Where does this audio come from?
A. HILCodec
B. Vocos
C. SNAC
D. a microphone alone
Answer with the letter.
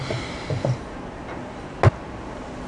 D